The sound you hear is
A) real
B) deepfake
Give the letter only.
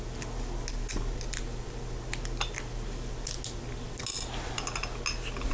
A